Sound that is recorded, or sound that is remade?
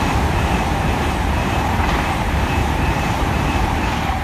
remade